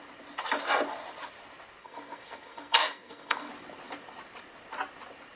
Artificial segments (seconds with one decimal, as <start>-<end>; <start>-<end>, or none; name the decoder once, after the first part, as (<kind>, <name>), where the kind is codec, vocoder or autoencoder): 1.8-3.5 (codec, SNAC)